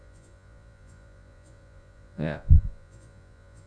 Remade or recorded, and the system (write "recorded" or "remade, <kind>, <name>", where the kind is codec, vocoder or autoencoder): remade, vocoder, Vocos